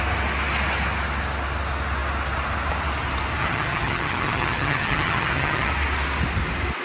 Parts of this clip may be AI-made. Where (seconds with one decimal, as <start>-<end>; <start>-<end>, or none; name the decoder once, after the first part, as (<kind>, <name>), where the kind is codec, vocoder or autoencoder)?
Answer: 3.4-5.7 (vocoder, HiFi-GAN)